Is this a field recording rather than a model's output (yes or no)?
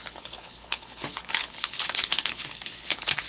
no